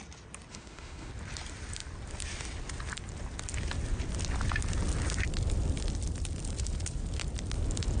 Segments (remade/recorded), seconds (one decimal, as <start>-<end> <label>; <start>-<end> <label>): 0.0-0.5 recorded; 0.5-1.1 remade; 1.1-8.0 recorded